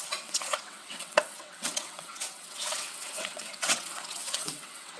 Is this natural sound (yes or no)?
no